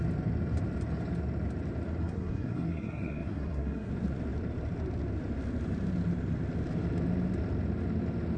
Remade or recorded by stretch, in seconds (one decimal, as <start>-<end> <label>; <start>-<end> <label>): 0.0-2.0 recorded; 2.0-3.9 remade; 3.9-8.4 recorded